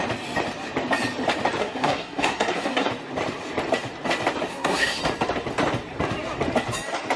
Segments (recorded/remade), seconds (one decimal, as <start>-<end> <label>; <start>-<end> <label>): 0.0-1.6 recorded; 1.6-2.9 remade; 2.9-4.5 recorded; 4.5-5.0 remade; 5.0-7.2 recorded